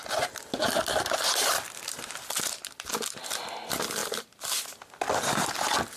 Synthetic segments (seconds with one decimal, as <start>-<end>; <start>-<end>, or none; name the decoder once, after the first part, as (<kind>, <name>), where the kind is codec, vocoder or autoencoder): none